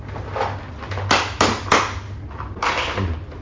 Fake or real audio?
real